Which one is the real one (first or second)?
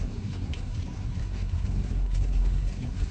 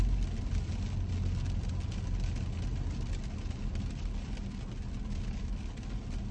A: second